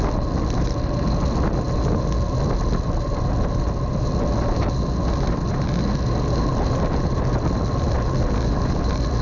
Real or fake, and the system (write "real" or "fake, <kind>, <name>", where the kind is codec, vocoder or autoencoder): real